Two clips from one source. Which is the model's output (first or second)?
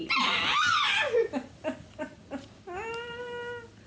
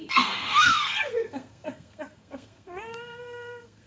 second